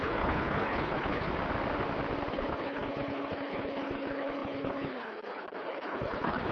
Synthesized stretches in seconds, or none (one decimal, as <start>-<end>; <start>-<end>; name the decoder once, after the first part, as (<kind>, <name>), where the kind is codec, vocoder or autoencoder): 0.0-1.3 (codec, HILCodec); 2.3-6.5